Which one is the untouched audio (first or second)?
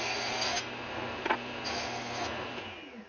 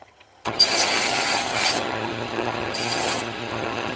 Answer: first